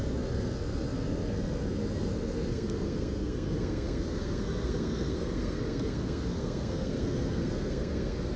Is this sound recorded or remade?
remade